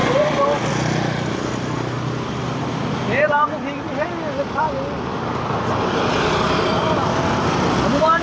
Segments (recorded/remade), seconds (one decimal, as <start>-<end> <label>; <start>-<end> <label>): 0.0-8.2 recorded